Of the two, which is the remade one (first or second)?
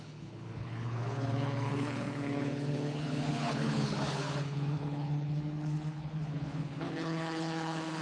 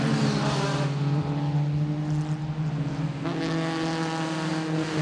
first